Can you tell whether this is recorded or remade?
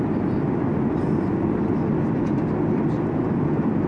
recorded